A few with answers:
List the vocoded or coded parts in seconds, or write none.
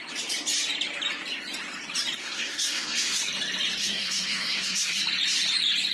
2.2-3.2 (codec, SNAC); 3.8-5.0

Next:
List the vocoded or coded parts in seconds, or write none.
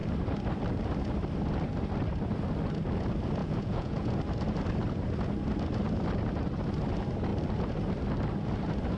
3.4-4.1 (vocoder, Vocos)